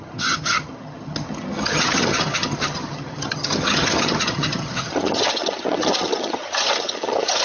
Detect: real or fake fake